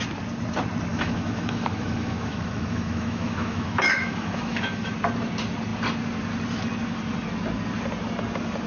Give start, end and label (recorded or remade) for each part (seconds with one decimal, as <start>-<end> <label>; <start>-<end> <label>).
0.0-0.9 recorded; 0.9-4.9 remade; 4.9-8.7 recorded